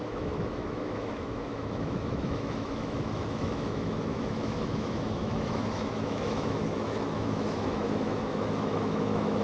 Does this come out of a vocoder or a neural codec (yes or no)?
yes